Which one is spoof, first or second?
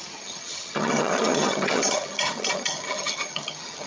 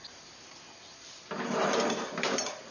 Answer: first